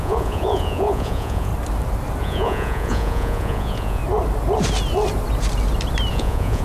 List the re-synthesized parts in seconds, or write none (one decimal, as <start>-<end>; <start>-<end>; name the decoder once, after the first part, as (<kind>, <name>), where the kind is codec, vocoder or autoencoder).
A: 0.0-1.5 (vocoder, Vocos); 2.2-4.0; 6.1-6.6